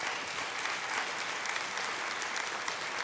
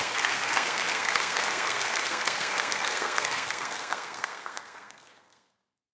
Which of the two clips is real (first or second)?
first